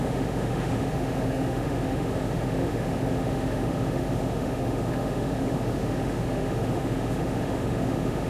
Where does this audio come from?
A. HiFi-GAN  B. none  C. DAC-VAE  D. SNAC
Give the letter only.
C